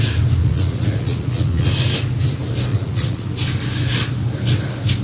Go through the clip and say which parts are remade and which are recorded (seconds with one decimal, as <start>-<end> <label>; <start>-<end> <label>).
0.0-0.4 recorded; 0.4-1.7 remade; 1.7-2.7 recorded; 2.7-3.3 remade; 3.3-5.0 recorded